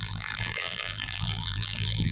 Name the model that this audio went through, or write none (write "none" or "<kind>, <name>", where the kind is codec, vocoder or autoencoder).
vocoder, BigVGAN v2